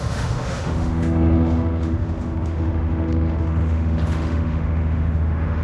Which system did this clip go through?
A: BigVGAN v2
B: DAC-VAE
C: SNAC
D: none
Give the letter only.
B